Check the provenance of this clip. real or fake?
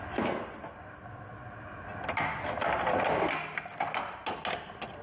real